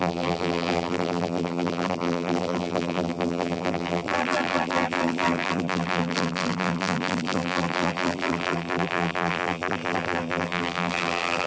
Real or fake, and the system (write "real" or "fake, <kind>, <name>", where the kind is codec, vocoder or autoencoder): fake, vocoder, BigVGAN v2